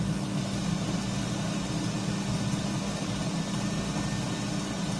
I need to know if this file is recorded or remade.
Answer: recorded